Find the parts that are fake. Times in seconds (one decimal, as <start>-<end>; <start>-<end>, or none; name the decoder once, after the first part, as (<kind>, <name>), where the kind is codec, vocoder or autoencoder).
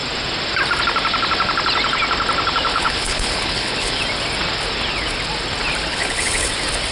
2.7-4.0 (codec, HILCodec); 5.9-6.5